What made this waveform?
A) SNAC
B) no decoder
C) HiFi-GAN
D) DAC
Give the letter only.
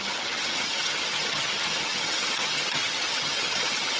C